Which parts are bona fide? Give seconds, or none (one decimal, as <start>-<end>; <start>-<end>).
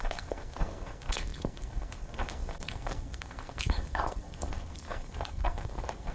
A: none